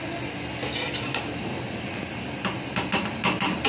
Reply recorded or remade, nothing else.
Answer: recorded